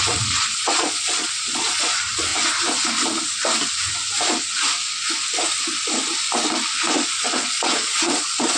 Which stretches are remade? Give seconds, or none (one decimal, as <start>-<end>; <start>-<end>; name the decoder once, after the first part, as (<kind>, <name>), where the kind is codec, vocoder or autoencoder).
0.0-2.3 (vocoder, Vocos); 6.9-8.6

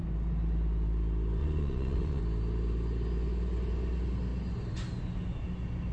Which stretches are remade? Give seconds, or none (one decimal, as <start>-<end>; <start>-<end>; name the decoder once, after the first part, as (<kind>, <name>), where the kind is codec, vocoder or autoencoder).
1.4-2.2 (vocoder, Vocos)